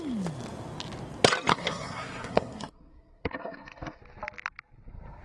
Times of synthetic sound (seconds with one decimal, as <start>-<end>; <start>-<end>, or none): 1.5-4.0